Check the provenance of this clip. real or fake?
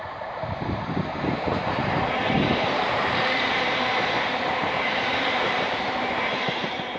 fake